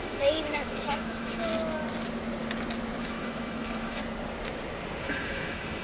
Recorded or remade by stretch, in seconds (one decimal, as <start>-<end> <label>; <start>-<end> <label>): 0.0-1.5 remade; 1.5-3.0 recorded; 3.0-4.0 remade; 4.0-5.0 recorded; 5.0-5.8 remade